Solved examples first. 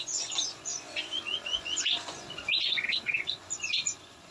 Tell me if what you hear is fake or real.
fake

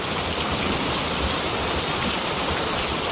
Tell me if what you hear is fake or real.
real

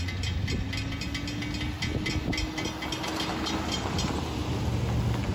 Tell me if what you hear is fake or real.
real